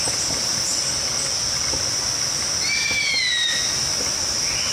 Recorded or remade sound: recorded